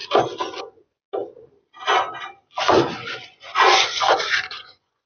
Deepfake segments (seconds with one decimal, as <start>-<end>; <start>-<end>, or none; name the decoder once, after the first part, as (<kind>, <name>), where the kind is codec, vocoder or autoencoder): 0.6-1.0 (vocoder, Vocos); 2.6-5.1